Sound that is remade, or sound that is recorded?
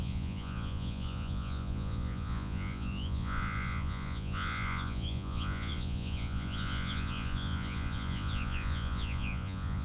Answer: remade